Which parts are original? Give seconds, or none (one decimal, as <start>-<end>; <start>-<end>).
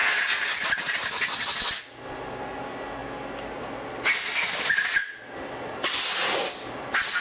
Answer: 0.0-7.2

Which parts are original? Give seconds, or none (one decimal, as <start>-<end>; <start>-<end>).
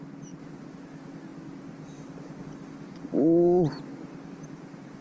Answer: 0.0-5.0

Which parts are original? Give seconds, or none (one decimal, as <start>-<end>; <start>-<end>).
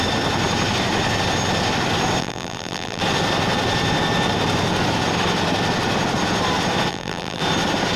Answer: 0.0-2.2; 3.0-6.9; 7.4-8.0